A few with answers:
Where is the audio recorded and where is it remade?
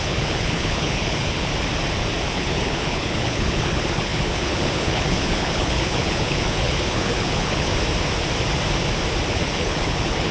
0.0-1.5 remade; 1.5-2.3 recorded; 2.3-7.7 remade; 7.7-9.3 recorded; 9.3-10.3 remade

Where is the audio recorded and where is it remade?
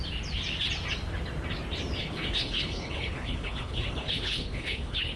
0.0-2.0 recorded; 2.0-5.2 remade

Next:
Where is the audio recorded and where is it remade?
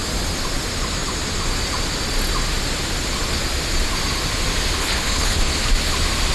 0.0-4.8 recorded; 4.8-5.5 remade; 5.5-6.3 recorded